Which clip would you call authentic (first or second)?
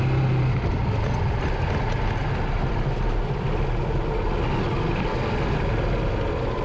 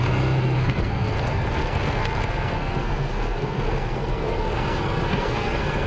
first